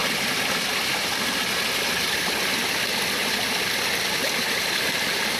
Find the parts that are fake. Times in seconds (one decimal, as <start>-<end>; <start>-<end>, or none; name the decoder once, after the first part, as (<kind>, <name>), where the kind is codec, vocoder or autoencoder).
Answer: none